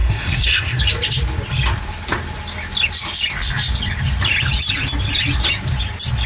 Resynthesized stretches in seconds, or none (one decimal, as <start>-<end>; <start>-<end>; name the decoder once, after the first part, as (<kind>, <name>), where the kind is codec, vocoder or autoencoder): 0.0-0.8 (codec, SNAC)